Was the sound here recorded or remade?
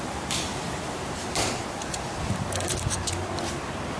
remade